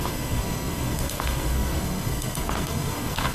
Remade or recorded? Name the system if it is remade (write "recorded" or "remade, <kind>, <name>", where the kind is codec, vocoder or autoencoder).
remade, codec, SNAC